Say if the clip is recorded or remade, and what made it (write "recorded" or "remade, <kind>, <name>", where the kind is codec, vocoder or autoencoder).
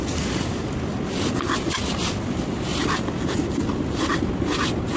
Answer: recorded